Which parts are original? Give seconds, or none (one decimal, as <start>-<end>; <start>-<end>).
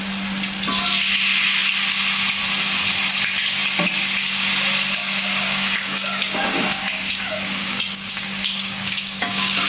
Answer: 0.0-5.0